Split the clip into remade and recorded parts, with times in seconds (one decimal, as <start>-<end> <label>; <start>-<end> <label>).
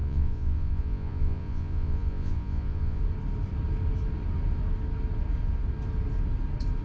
0.0-3.0 remade; 3.0-6.8 recorded